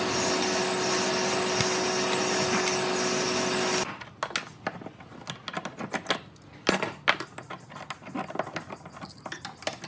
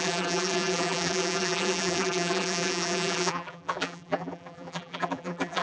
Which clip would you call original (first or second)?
first